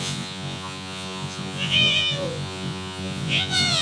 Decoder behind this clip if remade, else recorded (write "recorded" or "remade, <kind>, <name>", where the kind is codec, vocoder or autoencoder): remade, vocoder, Vocos